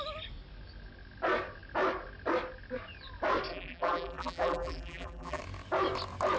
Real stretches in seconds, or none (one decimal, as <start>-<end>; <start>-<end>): 0.0-3.5; 5.4-6.4